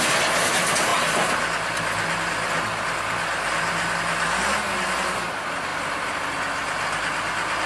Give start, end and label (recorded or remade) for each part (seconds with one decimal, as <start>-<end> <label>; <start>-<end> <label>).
0.0-7.7 recorded